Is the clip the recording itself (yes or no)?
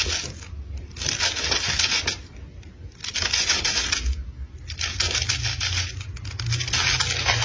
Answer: yes